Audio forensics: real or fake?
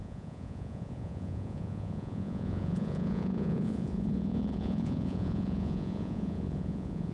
fake